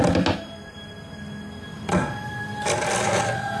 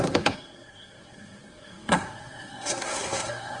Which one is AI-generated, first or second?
second